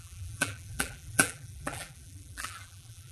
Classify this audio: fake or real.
fake